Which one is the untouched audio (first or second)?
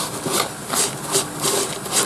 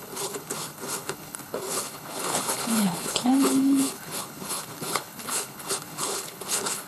first